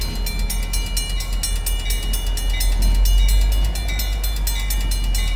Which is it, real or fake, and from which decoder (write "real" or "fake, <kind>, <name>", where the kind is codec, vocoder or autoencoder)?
real